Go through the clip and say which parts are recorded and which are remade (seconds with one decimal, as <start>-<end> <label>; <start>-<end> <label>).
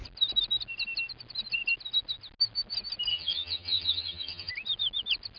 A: 0.0-3.1 recorded; 3.1-4.5 remade; 4.5-5.4 recorded